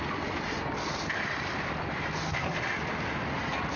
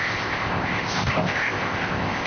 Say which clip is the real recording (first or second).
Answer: first